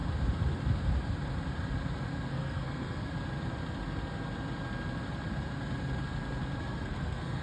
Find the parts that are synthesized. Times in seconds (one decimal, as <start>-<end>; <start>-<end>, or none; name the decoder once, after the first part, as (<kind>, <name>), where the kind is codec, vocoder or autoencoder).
2.3-3.1 (codec, SNAC); 6.6-7.4